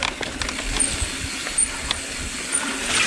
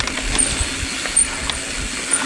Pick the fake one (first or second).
first